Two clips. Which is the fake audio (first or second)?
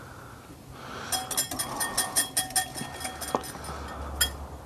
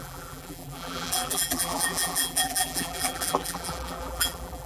second